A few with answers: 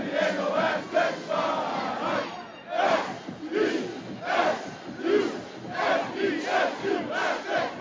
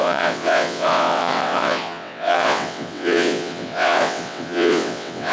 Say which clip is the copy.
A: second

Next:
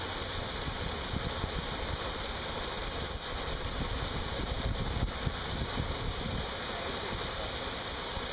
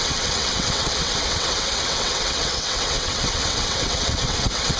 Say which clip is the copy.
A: second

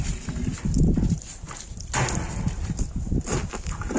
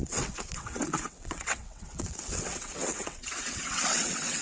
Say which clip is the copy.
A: second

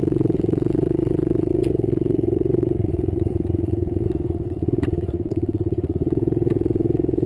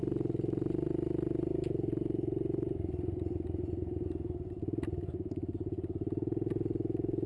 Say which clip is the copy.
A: first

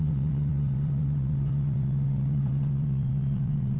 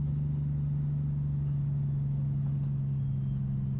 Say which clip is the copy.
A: first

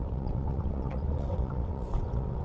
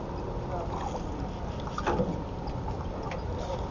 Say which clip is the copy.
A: first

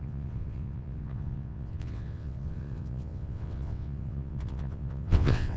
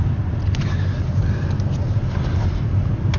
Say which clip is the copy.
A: first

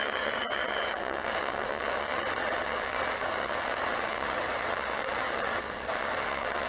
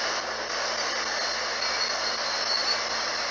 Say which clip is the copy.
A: first